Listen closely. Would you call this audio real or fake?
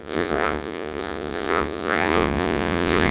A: fake